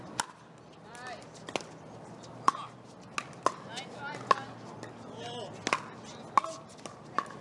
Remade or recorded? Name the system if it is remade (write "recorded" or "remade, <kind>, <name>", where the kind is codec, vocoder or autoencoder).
recorded